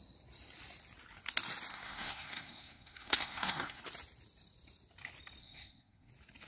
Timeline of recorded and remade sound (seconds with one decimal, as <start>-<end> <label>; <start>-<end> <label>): 0.0-1.7 recorded; 1.7-3.8 remade; 3.8-5.4 recorded; 5.4-6.1 remade; 6.1-6.5 recorded